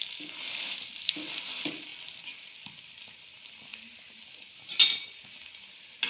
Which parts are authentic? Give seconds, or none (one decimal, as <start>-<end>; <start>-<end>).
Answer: 0.0-6.1